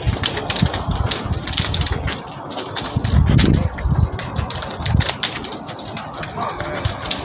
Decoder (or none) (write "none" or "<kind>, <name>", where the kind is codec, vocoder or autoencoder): none